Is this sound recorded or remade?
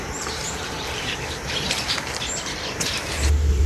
remade